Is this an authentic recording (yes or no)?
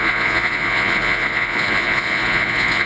no